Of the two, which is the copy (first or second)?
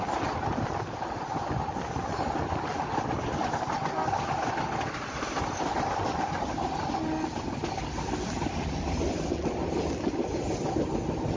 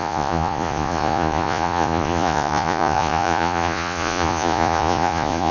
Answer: second